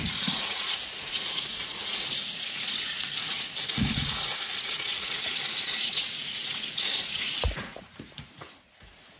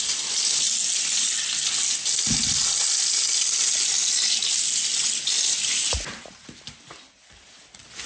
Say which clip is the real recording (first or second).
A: second